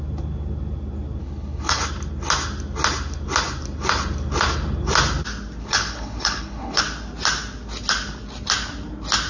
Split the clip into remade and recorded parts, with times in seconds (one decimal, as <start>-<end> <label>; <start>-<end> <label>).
0.0-1.2 recorded; 1.2-1.8 remade; 1.8-5.6 recorded; 5.6-6.8 remade; 6.8-9.3 recorded

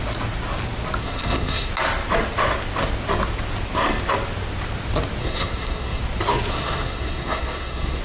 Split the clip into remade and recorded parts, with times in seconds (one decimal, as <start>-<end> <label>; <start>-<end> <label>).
0.0-1.0 recorded; 1.0-1.7 remade; 1.7-5.2 recorded; 5.2-6.0 remade; 6.0-6.5 recorded; 6.5-8.0 remade

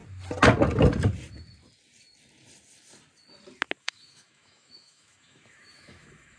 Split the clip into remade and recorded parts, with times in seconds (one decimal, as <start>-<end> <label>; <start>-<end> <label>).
0.0-3.8 recorded; 3.8-6.4 remade